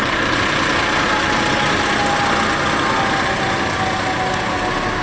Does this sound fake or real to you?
real